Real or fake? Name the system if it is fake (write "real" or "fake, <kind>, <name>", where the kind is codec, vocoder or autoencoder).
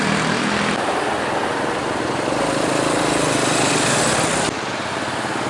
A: real